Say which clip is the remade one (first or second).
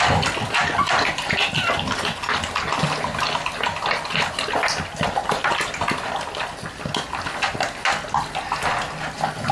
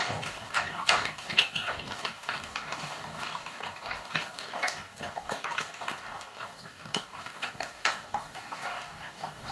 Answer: second